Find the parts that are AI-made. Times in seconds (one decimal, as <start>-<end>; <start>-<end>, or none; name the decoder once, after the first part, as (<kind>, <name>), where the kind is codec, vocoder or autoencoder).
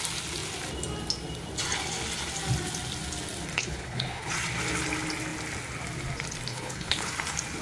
3.5-4.3 (codec, HILCodec); 6.5-7.1